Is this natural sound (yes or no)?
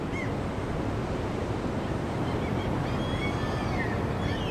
yes